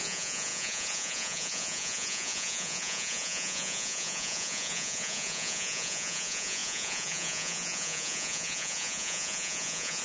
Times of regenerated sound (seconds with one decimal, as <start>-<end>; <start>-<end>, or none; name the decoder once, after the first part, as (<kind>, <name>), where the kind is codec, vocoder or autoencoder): 0.0-10.0 (vocoder, Vocos)